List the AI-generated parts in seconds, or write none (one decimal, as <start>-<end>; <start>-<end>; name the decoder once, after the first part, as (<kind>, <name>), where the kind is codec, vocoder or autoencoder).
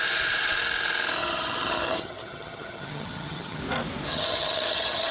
1.2-3.6 (vocoder, HiFi-GAN); 4.1-5.1